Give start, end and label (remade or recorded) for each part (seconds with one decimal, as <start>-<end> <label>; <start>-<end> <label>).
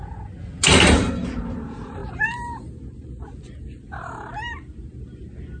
0.0-5.6 recorded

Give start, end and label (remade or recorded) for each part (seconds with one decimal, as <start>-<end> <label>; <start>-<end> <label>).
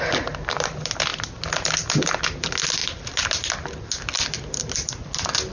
0.0-5.5 recorded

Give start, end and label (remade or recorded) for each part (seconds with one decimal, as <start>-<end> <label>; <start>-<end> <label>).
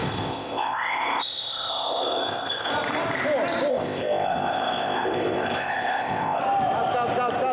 0.0-2.7 remade; 2.7-3.7 recorded; 3.7-6.4 remade; 6.4-7.5 recorded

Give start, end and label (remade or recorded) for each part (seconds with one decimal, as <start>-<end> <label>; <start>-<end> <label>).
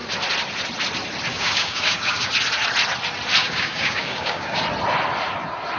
0.0-1.3 recorded; 1.3-2.3 remade; 2.3-3.4 recorded; 3.4-4.6 remade; 4.6-5.8 recorded